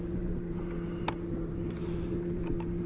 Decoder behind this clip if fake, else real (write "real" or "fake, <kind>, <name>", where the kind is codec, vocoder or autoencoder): fake, vocoder, BigVGAN v2